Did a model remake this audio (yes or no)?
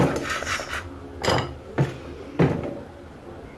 no